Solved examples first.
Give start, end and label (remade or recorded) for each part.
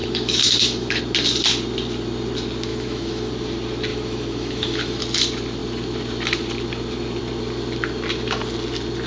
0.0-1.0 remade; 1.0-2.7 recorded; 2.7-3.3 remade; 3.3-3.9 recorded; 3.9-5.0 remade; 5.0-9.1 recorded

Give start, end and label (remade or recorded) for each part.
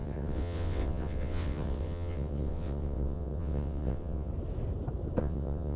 0.0-4.3 remade; 4.3-5.2 recorded; 5.2-5.8 remade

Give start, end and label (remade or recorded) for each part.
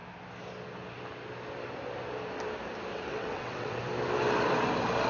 0.0-2.9 recorded; 2.9-3.8 remade; 3.8-5.1 recorded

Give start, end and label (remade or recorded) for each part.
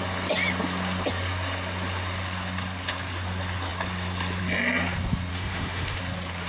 0.0-5.3 recorded; 5.3-6.0 remade; 6.0-6.5 recorded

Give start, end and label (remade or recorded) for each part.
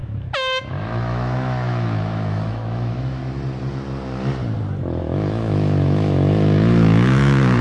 0.0-3.2 remade; 3.2-5.0 recorded; 5.0-7.6 remade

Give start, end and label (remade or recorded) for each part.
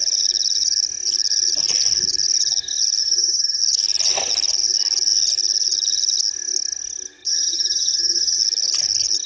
0.0-3.0 recorded; 3.0-3.6 remade; 3.6-7.2 recorded; 7.2-8.4 remade; 8.4-9.3 recorded